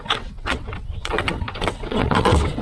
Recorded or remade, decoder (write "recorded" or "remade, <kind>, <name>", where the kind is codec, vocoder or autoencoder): remade, vocoder, WaveNeXt